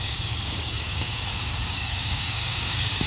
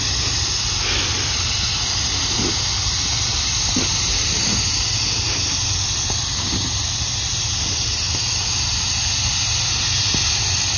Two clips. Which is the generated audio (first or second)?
first